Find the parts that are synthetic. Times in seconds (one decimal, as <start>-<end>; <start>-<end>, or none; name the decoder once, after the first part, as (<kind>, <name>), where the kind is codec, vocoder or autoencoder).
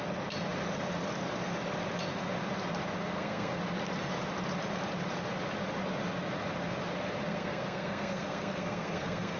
3.0-3.6 (codec, SNAC); 7.3-9.4